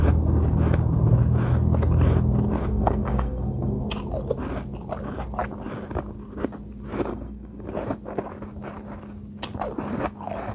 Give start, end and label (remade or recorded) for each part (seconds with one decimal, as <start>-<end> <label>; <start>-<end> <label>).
0.0-2.7 recorded; 2.7-3.8 remade; 3.8-7.1 recorded; 7.1-7.7 remade; 7.7-10.5 recorded